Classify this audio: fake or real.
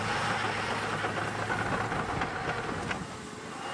real